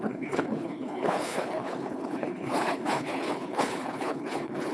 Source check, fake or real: fake